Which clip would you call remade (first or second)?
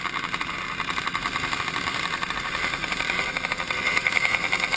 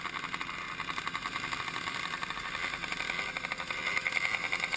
first